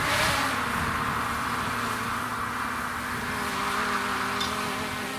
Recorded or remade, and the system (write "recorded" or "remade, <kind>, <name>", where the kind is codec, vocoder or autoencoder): recorded